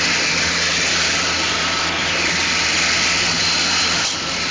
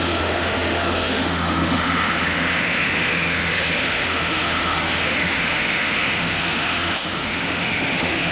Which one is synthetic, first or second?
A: second